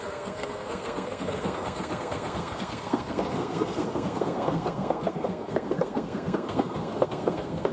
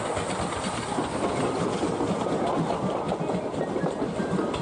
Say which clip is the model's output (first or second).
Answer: first